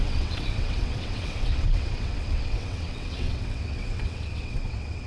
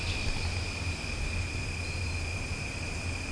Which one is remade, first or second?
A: first